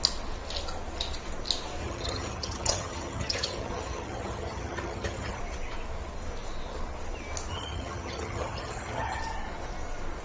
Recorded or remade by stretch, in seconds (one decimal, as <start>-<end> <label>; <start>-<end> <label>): 0.0-1.8 recorded; 1.8-5.4 remade; 5.4-7.5 recorded; 7.5-9.2 remade; 9.2-10.2 recorded